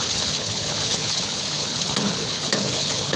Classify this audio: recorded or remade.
remade